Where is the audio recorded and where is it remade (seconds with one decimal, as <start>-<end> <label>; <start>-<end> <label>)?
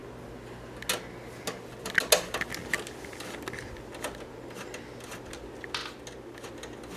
0.0-7.0 recorded